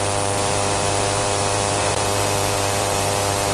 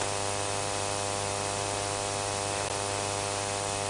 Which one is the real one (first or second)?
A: second